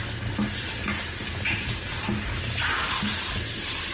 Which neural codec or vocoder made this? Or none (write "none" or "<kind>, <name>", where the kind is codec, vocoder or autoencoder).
none